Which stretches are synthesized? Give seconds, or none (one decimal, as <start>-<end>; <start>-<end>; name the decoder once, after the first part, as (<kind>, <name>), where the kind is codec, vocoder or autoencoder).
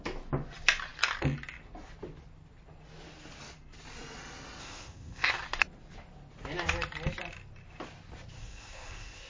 4.6-5.3 (codec, ZipCodec); 8.4-9.3